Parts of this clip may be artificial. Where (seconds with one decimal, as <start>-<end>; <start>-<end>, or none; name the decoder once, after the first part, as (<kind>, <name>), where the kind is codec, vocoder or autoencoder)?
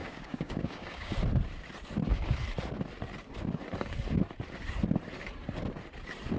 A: 0.0-1.1 (codec, DAC)